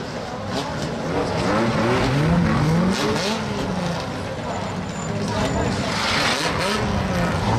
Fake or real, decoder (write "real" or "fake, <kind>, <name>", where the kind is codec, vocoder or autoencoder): real